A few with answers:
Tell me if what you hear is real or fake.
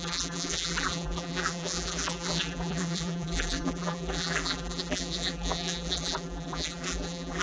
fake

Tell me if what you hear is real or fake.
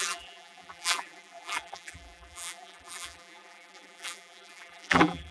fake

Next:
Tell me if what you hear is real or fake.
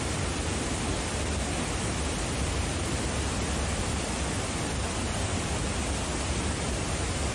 real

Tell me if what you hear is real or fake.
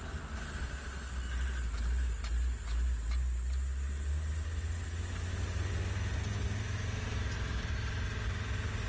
real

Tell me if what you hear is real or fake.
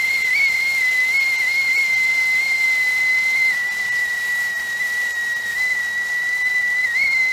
real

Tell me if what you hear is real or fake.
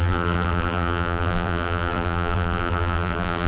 fake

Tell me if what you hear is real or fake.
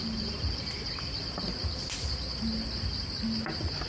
real